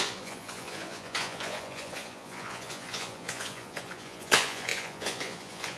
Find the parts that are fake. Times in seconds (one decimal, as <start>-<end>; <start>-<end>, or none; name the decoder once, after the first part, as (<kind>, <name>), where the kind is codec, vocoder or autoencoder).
0.0-5.8 (vocoder, Vocos)